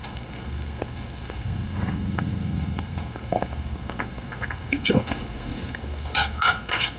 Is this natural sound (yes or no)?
no